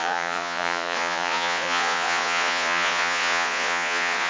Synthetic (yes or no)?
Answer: yes